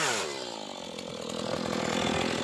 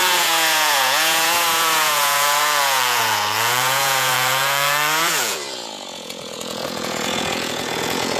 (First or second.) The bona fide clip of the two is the first